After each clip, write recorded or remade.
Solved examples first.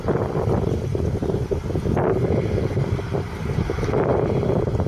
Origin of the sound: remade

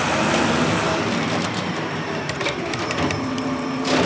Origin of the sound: remade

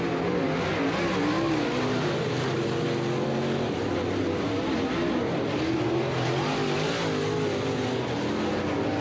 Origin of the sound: recorded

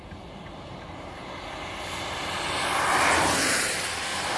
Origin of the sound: recorded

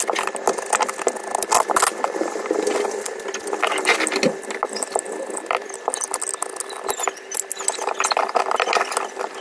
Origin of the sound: recorded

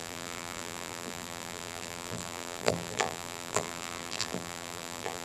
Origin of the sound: remade